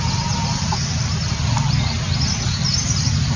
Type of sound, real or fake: real